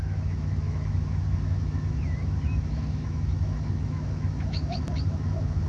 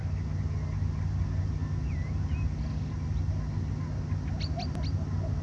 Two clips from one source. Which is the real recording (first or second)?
second